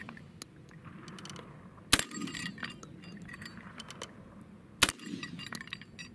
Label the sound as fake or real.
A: real